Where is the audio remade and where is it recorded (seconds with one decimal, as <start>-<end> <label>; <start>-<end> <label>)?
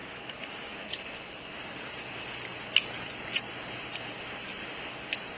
0.0-1.0 remade; 1.0-5.4 recorded